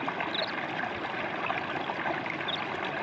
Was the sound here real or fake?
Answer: real